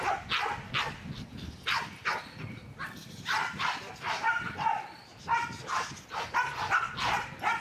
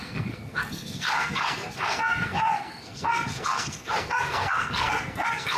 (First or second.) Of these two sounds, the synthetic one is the second